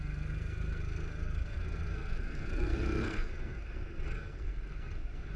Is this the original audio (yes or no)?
no